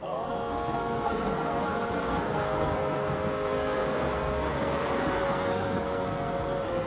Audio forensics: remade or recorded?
remade